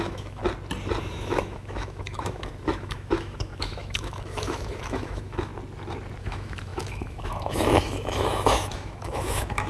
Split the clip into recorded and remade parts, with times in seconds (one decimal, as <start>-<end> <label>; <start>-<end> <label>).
0.0-0.4 remade; 0.4-1.1 recorded; 1.1-5.5 remade; 5.5-6.2 recorded; 6.2-9.7 remade